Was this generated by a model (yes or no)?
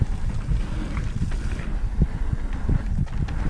no